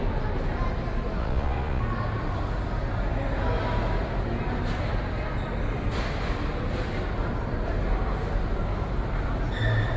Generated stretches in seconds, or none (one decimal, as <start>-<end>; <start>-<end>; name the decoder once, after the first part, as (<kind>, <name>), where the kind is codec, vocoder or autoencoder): 1.2-1.8 (vocoder, Vocos)